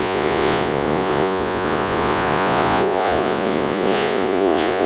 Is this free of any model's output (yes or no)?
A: no